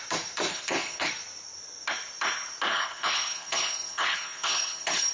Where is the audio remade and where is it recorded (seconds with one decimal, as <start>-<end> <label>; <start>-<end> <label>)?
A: 0.0-0.5 recorded; 0.5-1.1 remade; 1.1-2.7 recorded; 2.7-5.1 remade